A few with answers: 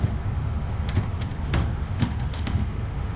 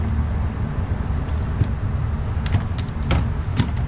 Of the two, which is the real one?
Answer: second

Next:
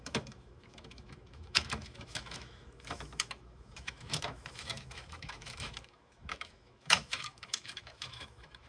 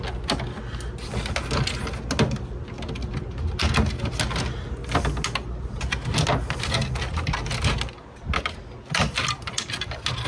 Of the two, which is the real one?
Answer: second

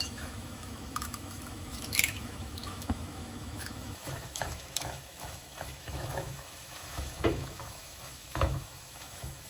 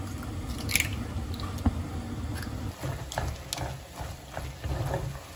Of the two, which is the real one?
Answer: second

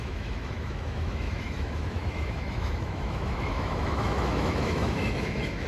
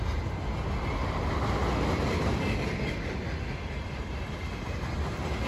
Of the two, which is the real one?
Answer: second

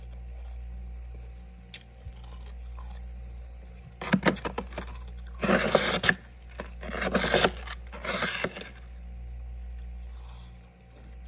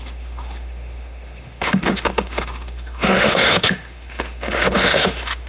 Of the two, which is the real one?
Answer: first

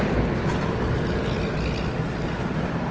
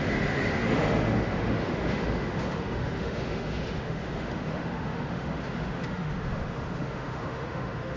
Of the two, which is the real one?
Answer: first